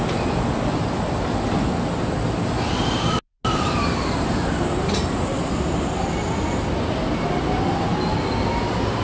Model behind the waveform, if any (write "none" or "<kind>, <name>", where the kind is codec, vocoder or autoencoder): none